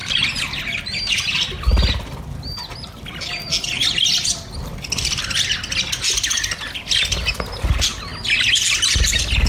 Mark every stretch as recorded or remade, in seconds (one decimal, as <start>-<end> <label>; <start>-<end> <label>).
0.0-9.5 recorded